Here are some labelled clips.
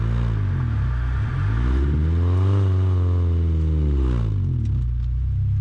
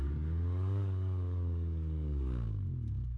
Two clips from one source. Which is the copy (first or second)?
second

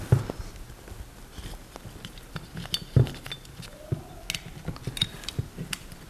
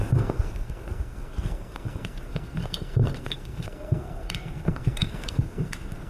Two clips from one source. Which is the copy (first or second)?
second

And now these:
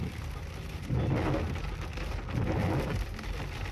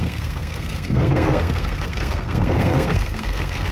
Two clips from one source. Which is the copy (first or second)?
second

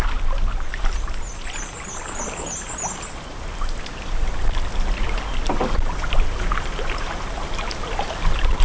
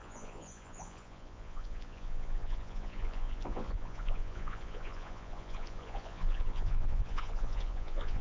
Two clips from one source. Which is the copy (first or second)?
second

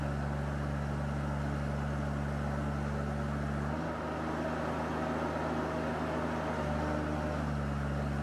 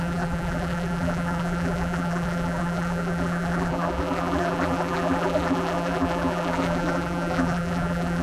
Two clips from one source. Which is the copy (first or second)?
second